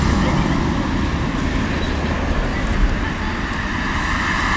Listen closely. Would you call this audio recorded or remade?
recorded